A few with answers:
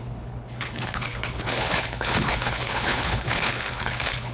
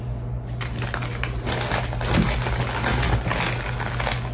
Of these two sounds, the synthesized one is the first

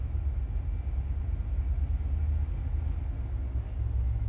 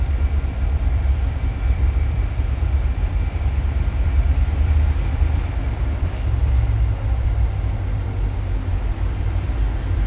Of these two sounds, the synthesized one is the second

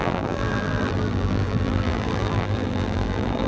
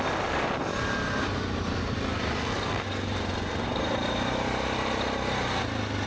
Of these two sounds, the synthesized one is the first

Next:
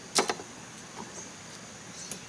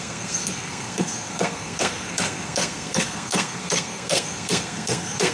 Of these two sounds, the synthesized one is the second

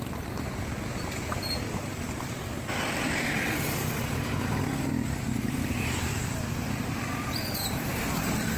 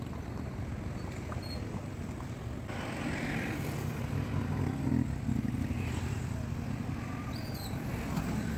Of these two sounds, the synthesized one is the first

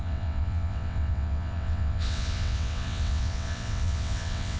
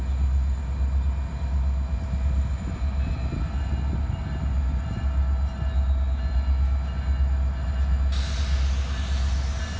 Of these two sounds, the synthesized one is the first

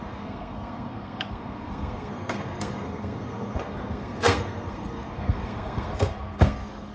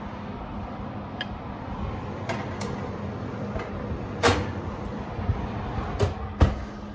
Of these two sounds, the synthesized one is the first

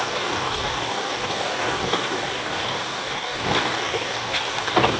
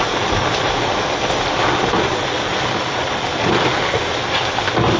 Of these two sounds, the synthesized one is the first